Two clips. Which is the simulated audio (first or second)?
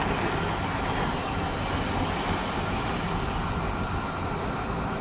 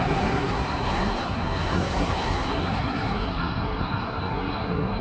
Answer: second